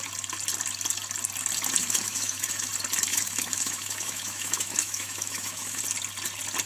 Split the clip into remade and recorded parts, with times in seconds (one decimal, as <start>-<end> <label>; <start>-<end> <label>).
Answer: 0.0-1.8 recorded; 1.8-2.7 remade; 2.7-3.1 recorded; 3.1-5.8 remade; 5.8-6.7 recorded